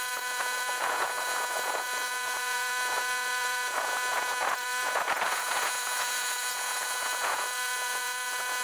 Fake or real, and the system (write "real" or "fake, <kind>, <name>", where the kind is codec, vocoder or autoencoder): fake, vocoder, Vocos